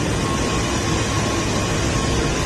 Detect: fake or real real